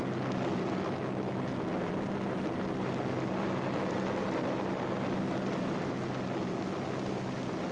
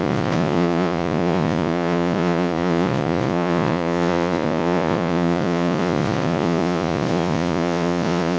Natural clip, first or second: first